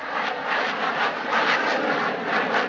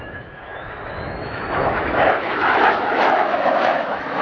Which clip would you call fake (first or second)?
second